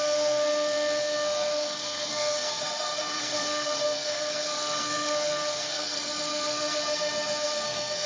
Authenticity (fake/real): fake